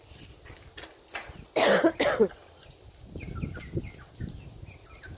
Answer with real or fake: real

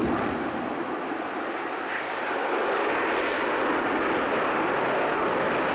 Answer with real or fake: real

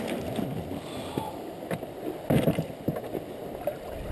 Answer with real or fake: real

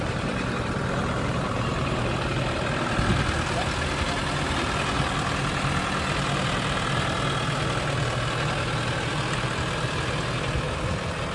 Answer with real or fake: real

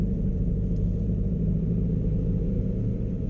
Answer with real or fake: fake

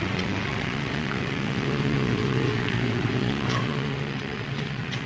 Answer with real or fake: fake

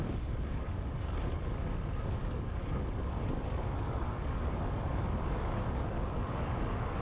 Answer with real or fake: fake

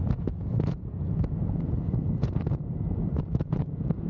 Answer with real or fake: fake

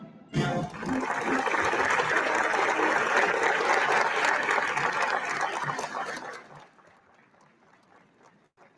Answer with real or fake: real